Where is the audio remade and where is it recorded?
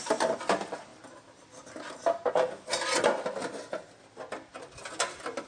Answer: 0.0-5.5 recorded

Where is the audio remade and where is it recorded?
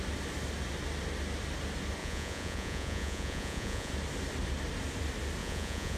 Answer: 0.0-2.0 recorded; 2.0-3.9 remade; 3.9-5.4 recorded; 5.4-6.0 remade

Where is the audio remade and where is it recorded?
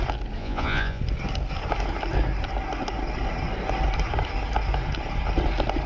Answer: 0.0-0.4 recorded; 0.4-1.0 remade; 1.0-5.9 recorded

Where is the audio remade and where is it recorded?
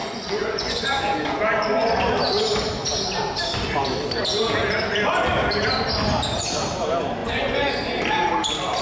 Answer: 0.0-1.4 remade; 1.4-7.2 recorded; 7.2-7.7 remade; 7.7-8.8 recorded